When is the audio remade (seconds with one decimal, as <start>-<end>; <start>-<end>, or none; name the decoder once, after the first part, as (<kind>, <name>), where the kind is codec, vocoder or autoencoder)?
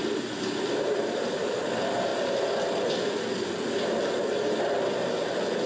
0.0-2.1 (vocoder, BigVGAN v2)